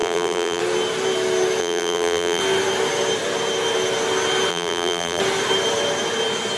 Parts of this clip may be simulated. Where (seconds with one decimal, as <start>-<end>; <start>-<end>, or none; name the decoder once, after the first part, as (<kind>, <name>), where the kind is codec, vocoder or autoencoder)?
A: 0.0-0.6 (vocoder, BigVGAN v2); 1.6-2.4; 4.5-5.2